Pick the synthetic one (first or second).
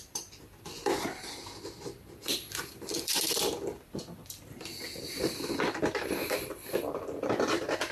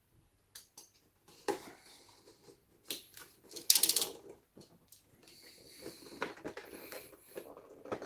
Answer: first